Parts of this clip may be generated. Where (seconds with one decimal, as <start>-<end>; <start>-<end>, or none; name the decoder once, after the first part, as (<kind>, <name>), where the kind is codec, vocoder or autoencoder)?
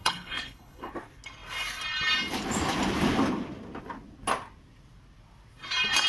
0.0-0.9 (codec, HILCodec)